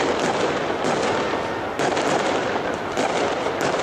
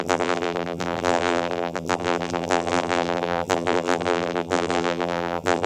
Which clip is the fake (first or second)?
second